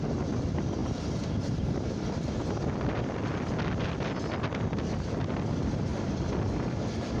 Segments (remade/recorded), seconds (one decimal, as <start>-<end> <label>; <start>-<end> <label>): 0.0-7.2 recorded